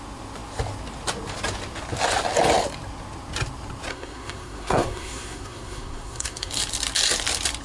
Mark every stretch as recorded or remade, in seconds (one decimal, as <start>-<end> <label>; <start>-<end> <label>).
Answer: 0.0-3.9 recorded; 3.9-6.5 remade; 6.5-7.6 recorded